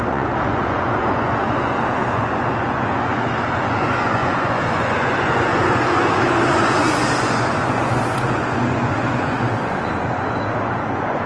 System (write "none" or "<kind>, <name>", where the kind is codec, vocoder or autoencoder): vocoder, Vocos